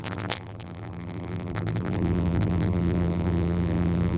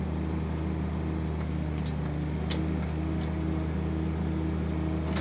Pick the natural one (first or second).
second